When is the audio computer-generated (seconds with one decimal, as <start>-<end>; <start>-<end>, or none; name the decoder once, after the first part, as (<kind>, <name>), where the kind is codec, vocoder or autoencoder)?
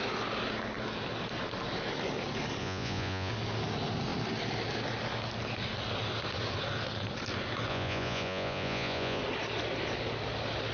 2.6-3.3 (vocoder, Vocos); 7.7-9.2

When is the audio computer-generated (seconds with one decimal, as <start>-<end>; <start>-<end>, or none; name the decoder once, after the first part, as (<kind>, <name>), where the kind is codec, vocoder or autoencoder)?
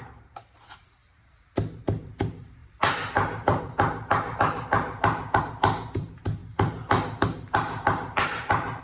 0.0-1.0 (vocoder, BigVGAN v2); 1.8-8.8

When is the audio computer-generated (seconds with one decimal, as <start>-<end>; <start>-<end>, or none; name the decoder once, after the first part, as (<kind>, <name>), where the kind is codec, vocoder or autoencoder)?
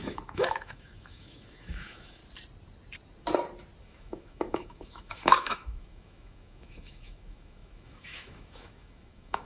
0.0-2.2 (autoencoder, DAC-VAE); 3.8-9.5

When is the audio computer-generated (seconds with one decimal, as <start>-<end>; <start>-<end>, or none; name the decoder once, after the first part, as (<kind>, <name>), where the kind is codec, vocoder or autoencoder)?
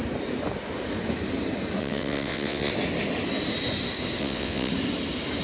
1.8-2.7 (vocoder, WaveNeXt); 4.2-4.7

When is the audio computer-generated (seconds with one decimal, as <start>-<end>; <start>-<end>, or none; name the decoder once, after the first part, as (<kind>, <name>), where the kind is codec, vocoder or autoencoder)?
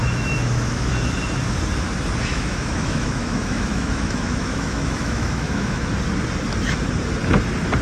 0.0-0.9 (autoencoder, DAC-VAE); 2.3-5.9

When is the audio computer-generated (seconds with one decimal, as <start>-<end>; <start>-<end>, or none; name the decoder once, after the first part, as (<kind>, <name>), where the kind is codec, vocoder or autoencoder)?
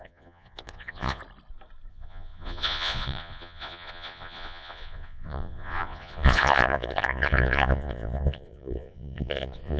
0.0-1.2 (vocoder, Vocos); 1.9-9.8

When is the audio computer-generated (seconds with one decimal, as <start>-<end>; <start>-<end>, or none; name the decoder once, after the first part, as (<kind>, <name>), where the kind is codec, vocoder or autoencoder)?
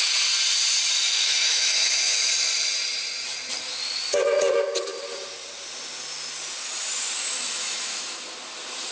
1.1-2.3 (autoencoder, DAC-VAE); 7.2-8.2